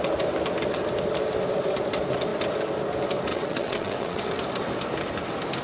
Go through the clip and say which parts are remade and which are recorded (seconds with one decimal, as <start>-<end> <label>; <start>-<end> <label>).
0.0-3.3 recorded; 3.3-4.2 remade; 4.2-5.6 recorded